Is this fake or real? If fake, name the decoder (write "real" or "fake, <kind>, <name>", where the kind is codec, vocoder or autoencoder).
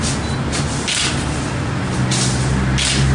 real